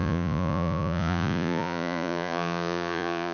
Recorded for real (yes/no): no